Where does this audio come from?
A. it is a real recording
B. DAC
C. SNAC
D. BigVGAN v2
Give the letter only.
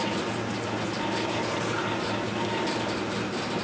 A